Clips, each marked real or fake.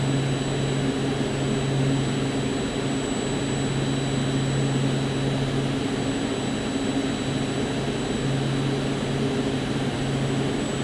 real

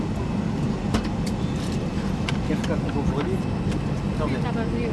real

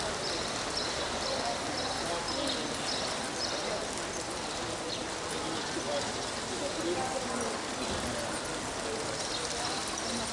real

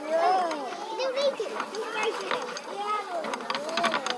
real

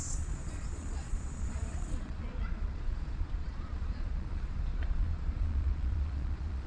fake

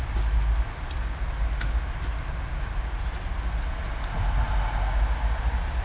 real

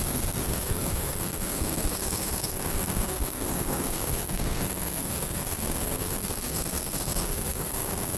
fake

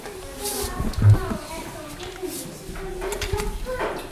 real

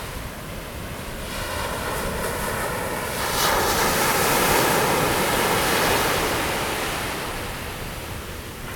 real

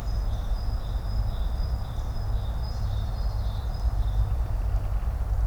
real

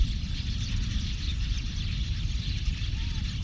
fake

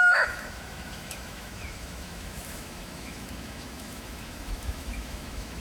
fake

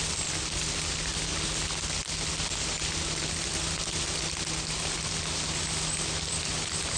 real